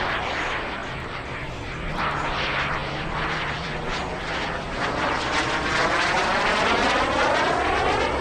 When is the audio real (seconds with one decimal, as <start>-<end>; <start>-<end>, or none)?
0.0-0.8; 1.9-6.2; 6.9-8.2

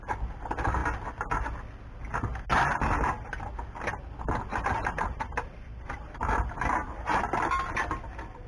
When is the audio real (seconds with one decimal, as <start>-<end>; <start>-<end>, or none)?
0.0-4.5; 7.2-8.5